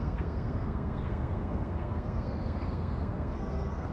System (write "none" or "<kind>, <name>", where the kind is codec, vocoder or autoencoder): codec, SNAC